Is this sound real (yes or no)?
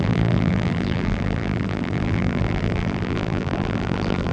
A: no